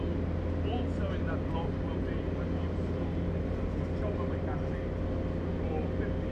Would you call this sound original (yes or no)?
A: yes